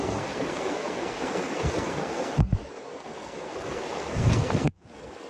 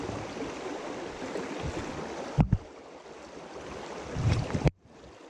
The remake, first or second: first